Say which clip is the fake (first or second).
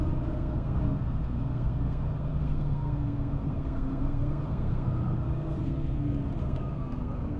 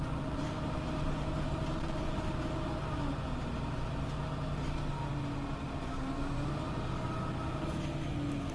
first